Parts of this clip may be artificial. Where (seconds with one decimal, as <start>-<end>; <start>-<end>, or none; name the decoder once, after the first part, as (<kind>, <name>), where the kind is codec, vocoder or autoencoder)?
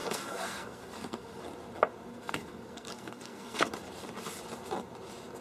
0.0-1.4 (codec, SNAC); 2.1-3.7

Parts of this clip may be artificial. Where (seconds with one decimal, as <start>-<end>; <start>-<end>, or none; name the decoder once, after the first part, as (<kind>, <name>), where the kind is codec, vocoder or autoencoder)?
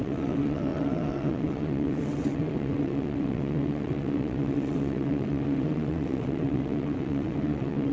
0.0-7.9 (vocoder, WaveNeXt)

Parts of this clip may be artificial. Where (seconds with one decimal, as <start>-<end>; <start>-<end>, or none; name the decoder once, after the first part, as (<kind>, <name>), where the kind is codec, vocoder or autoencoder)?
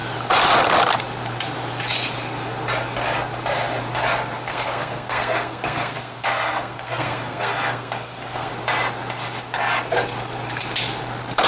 4.5-8.5 (codec, SNAC)